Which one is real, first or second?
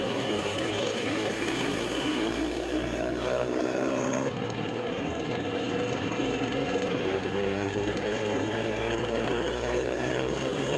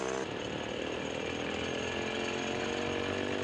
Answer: second